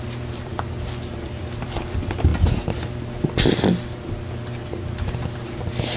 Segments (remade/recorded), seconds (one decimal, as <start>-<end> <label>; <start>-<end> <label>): 0.0-0.5 remade; 0.5-1.1 recorded; 1.1-2.3 remade; 2.3-6.0 recorded